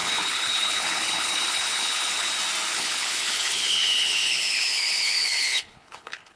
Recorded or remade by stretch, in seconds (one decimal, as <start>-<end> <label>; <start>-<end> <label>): 0.0-2.3 remade; 2.3-2.7 recorded; 2.7-6.4 remade